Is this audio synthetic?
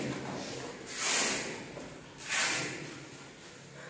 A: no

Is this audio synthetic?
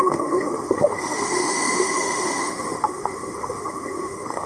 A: yes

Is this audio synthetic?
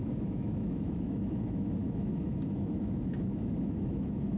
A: yes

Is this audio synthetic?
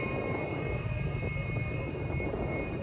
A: no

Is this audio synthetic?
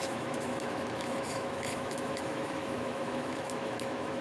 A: yes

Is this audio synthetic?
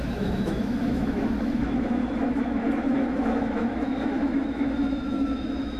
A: yes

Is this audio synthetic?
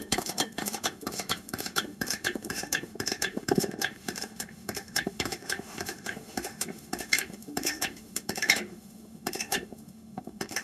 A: yes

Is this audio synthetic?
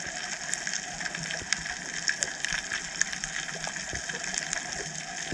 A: no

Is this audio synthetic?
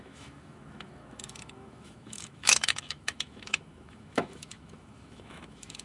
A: yes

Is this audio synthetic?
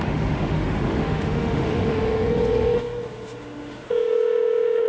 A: yes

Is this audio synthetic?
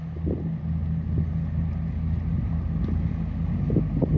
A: no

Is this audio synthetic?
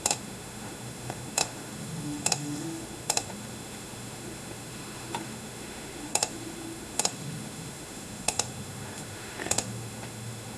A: yes